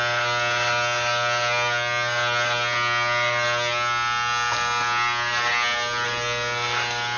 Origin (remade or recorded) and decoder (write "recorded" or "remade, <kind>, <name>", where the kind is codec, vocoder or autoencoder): recorded